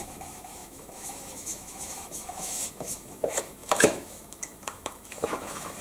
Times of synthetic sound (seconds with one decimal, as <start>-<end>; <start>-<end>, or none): 0.0-5.8